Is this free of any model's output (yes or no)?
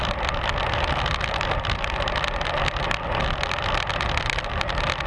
yes